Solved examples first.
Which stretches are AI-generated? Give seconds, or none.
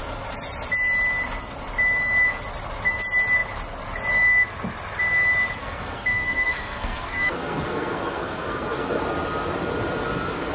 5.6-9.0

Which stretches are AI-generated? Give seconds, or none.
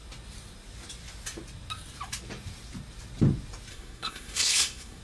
3.7-5.0